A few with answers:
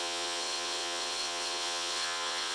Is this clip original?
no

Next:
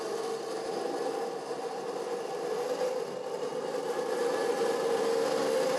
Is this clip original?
yes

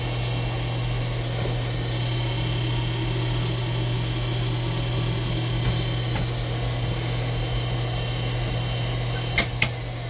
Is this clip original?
yes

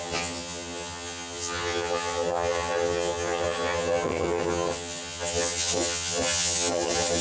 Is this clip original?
no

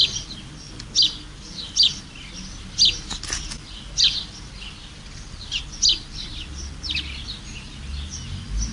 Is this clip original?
yes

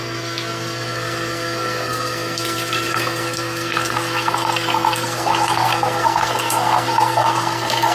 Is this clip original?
no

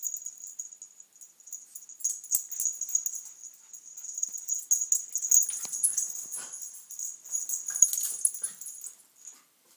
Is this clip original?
yes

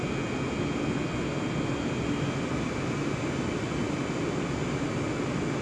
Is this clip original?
yes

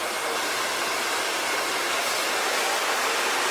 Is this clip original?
yes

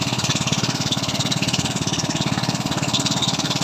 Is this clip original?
no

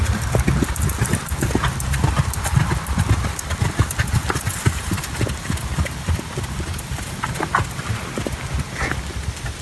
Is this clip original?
yes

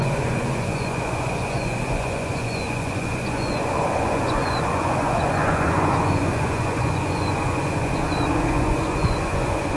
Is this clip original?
no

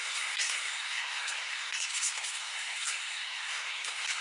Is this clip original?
no